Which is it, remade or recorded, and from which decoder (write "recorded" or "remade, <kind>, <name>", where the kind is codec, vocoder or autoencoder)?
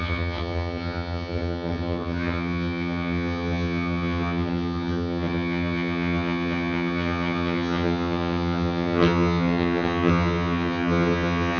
remade, vocoder, HiFi-GAN